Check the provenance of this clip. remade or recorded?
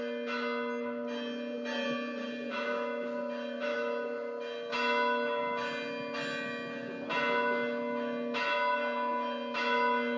recorded